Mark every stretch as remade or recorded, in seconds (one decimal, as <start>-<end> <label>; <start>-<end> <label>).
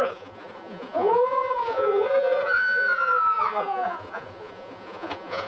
0.0-5.5 remade